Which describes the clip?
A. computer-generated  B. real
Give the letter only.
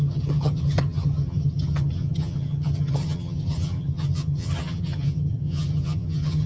A